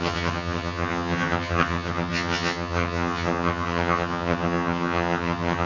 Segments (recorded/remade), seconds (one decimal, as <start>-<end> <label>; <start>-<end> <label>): 0.0-5.7 remade